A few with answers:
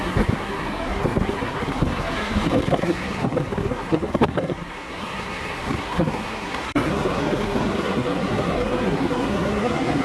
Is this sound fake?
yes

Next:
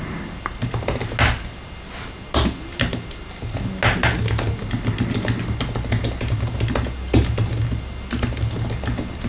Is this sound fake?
no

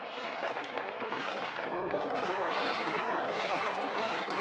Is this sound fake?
yes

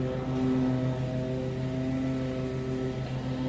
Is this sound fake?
no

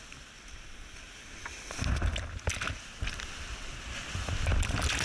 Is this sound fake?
no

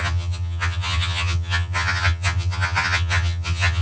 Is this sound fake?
yes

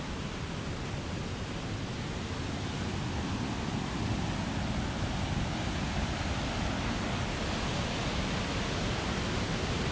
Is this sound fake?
no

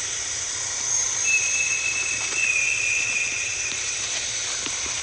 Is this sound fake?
no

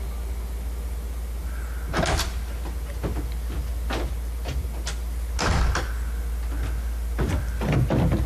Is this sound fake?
no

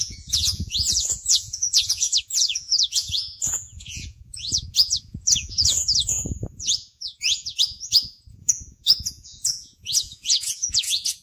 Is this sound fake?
yes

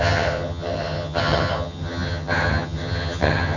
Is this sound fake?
yes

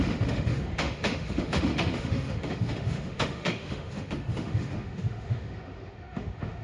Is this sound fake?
yes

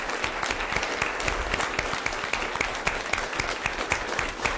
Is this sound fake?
no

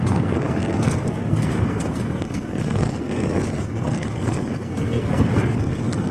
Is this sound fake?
yes